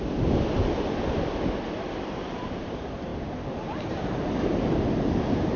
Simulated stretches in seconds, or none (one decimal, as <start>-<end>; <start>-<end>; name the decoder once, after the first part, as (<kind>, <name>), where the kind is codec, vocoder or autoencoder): 3.1-5.6 (vocoder, BigVGAN v2)